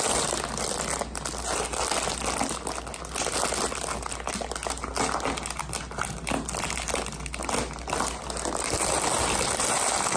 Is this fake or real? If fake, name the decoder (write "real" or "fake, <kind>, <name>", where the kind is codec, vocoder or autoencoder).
real